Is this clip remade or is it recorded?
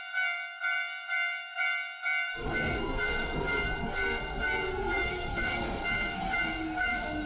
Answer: remade